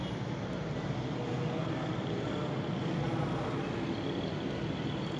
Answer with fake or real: real